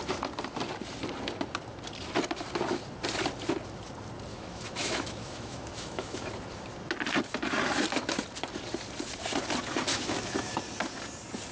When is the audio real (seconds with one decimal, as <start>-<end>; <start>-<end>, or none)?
0.0-4.3; 6.3-9.9; 10.6-11.5